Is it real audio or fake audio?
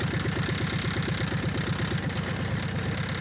real